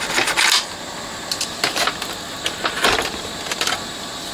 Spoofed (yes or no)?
no